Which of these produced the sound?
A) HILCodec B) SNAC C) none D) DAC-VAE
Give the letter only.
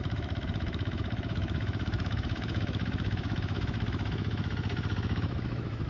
D